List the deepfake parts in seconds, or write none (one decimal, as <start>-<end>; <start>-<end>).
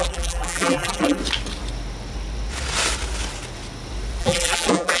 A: 0.0-1.2; 4.2-5.0